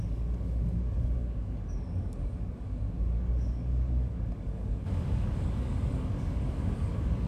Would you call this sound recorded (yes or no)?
no